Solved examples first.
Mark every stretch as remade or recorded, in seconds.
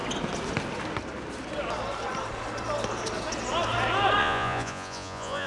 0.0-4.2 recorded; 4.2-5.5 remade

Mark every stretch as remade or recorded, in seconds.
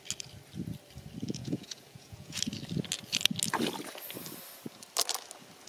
0.0-1.4 recorded; 1.4-2.4 remade; 2.4-5.7 recorded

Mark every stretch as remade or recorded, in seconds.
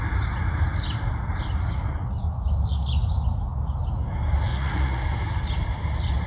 0.0-4.5 recorded; 4.5-5.0 remade; 5.0-6.3 recorded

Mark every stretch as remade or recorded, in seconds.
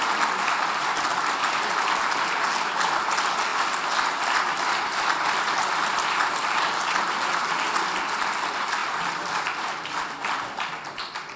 0.0-11.4 recorded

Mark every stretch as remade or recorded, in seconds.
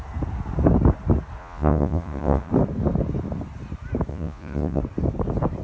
0.0-1.4 recorded; 1.4-2.5 remade; 2.5-4.1 recorded; 4.1-4.8 remade; 4.8-5.6 recorded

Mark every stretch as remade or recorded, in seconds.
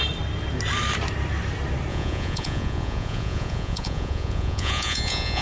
0.0-1.9 recorded; 1.9-5.4 remade